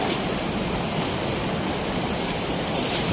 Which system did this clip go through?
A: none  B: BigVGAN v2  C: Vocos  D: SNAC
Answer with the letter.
A